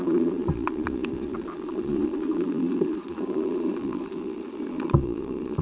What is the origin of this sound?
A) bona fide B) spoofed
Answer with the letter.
B